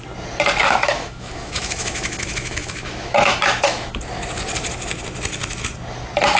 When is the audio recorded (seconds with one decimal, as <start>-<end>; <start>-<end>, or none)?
0.0-0.6; 4.0-6.4